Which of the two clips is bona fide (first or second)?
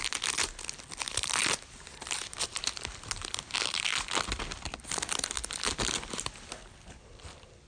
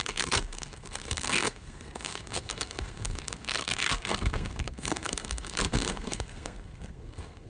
first